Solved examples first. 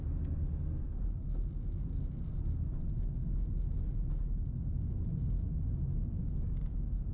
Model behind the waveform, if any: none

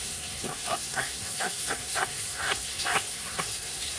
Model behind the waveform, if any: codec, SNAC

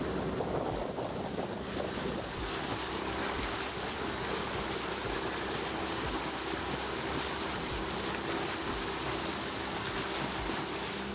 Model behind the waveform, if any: none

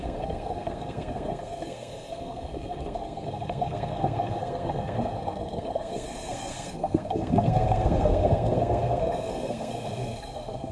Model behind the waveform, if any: codec, SNAC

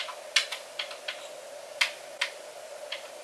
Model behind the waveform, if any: none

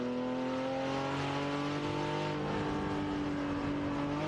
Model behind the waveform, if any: none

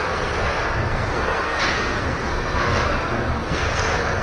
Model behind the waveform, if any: codec, SNAC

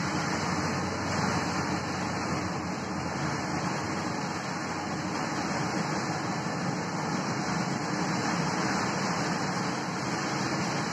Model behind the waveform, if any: none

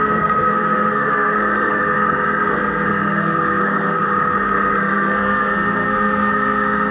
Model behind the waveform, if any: codec, SNAC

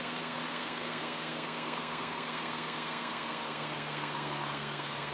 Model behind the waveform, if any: codec, SNAC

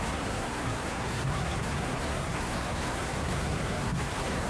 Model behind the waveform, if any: codec, SNAC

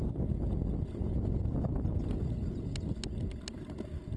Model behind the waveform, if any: none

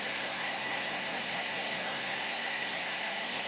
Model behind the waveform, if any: codec, SNAC